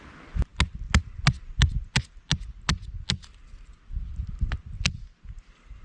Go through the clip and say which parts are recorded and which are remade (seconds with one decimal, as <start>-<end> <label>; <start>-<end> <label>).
0.0-5.8 recorded